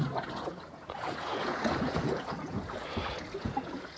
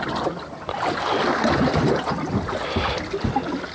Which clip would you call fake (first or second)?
first